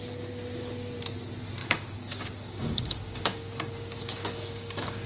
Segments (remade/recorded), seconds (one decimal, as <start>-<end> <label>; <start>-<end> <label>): 0.0-1.6 recorded; 1.6-5.1 remade